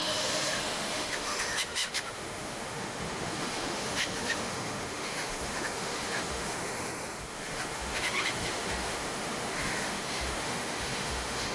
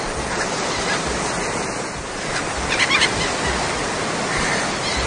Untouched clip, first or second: second